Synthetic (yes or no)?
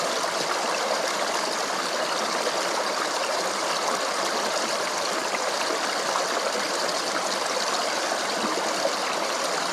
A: no